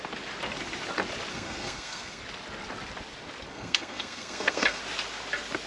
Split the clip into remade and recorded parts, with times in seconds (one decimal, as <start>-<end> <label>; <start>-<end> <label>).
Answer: 0.0-1.3 recorded; 1.3-2.2 remade; 2.2-3.5 recorded; 3.5-4.8 remade; 4.8-5.7 recorded